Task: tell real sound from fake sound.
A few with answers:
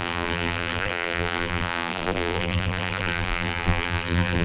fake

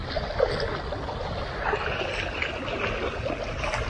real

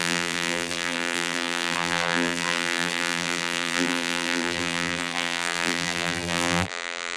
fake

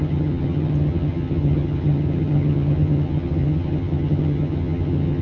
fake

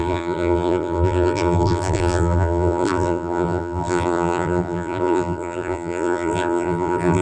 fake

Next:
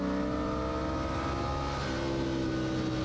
real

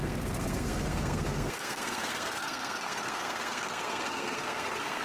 fake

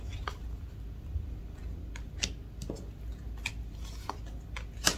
real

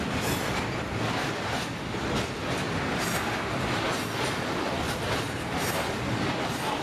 real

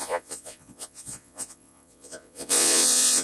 fake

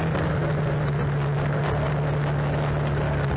real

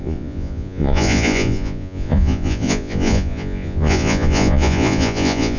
fake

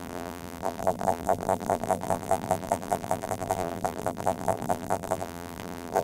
fake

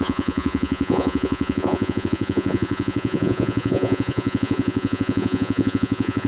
fake